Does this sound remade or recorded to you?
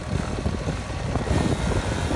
recorded